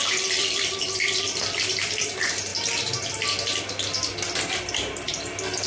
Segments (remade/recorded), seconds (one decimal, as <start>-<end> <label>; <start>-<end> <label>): 0.0-5.7 recorded